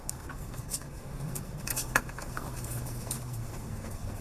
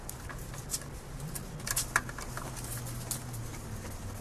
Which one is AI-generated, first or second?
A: first